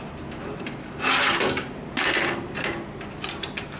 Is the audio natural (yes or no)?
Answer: yes